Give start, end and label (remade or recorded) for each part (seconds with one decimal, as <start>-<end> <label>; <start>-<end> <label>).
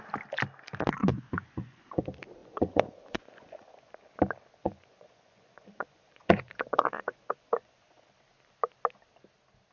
0.0-1.0 recorded; 1.0-2.0 remade; 2.0-2.4 recorded; 2.4-3.9 remade; 3.9-4.6 recorded; 4.6-8.1 remade; 8.1-9.7 recorded